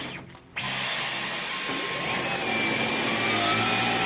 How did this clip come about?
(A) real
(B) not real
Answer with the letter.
A